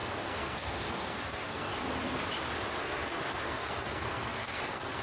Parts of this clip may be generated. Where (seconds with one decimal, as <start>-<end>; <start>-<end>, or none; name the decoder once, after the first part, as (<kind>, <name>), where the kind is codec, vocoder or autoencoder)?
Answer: 0.0-1.7 (codec, SNAC); 2.8-5.0